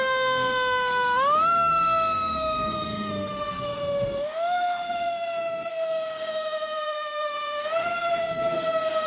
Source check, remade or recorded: remade